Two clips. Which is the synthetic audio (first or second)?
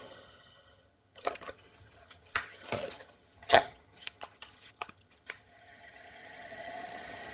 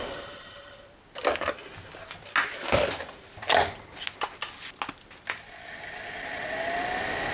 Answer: first